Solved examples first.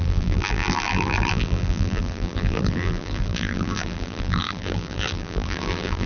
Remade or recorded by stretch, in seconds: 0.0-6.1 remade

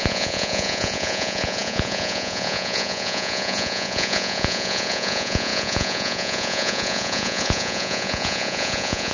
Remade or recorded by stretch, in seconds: 0.0-9.1 remade

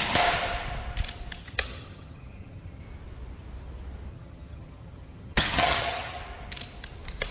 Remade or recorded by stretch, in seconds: 0.0-1.4 recorded; 1.4-2.8 remade; 2.8-4.1 recorded; 4.1-6.2 remade; 6.2-7.3 recorded

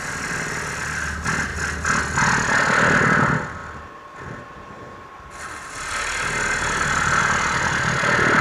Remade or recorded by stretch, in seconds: 0.0-8.4 recorded

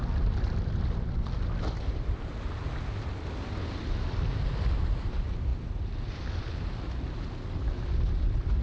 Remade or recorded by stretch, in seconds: 0.0-8.6 recorded

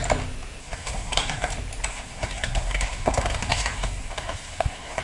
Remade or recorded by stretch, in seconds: 0.0-0.6 recorded; 0.6-1.5 remade; 1.5-1.9 recorded; 1.9-5.0 remade